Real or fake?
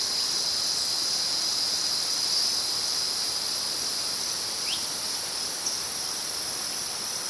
real